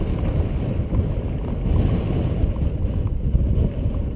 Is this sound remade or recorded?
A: recorded